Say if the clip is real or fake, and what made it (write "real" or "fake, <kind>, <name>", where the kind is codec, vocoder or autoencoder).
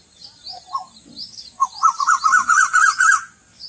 real